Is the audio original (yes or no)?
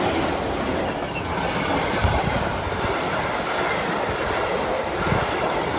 yes